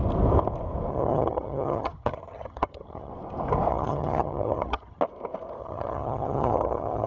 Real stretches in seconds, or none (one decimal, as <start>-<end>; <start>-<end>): 0.0-0.9; 3.1-3.7; 5.0-5.6